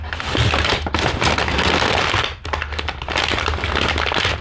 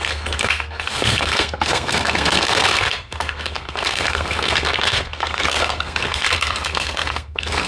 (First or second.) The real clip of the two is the first